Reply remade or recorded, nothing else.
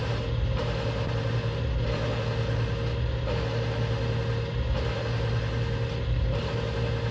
recorded